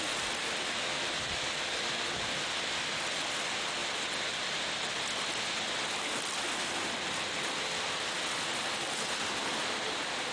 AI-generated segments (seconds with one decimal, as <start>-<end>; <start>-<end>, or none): none

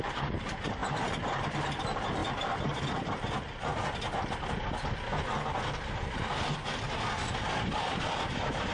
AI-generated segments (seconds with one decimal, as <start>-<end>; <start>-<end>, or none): 0.0-3.7; 7.6-8.7

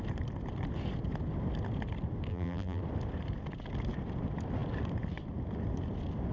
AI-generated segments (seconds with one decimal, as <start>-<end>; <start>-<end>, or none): 2.3-2.8